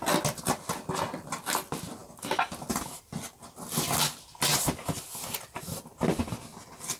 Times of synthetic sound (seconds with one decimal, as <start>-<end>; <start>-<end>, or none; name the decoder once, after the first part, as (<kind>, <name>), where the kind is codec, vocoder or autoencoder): none